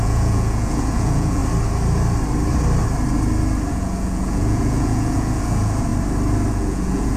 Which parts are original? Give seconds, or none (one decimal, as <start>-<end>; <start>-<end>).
1.4-3.7; 5.9-6.5

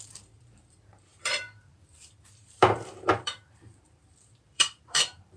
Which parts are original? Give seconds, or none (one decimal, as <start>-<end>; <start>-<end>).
none